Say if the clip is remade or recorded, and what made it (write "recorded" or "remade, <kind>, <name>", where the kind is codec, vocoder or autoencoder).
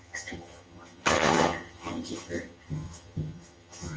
remade, vocoder, HiFi-GAN